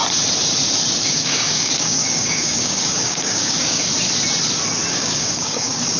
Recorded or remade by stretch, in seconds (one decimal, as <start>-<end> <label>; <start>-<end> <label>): 0.0-1.0 recorded; 1.0-3.9 remade; 3.9-4.9 recorded; 4.9-6.0 remade